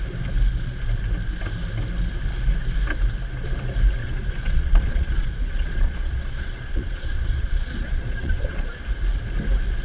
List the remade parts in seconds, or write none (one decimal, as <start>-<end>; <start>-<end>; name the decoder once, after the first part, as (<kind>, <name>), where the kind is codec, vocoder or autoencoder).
4.0-8.8 (vocoder, Vocos)